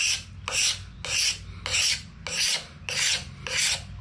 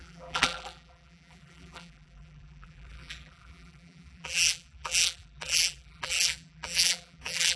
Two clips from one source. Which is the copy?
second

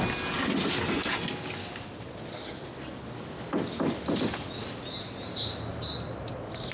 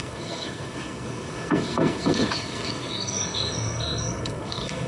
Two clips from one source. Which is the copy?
second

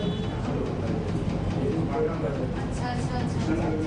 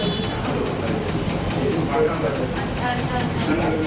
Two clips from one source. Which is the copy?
second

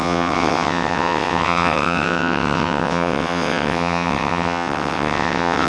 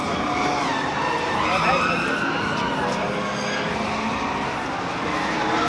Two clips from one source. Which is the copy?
first